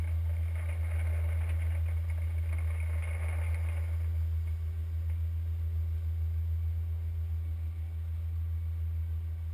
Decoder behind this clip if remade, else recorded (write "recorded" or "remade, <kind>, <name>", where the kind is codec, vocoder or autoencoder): recorded